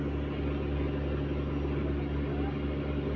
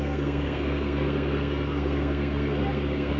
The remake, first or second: second